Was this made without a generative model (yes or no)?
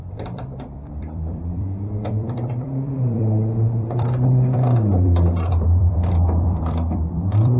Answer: no